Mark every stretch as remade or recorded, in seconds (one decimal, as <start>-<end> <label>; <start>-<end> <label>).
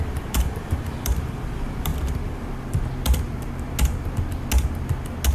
0.0-1.9 remade; 1.9-5.3 recorded